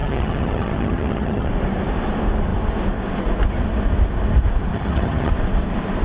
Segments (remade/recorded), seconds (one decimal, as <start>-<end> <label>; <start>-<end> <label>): 0.0-1.5 remade; 1.5-4.7 recorded; 4.7-5.3 remade; 5.3-6.0 recorded